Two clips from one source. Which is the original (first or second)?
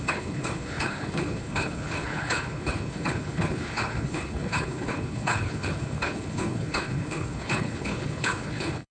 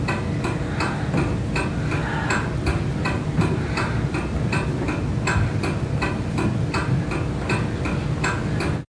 second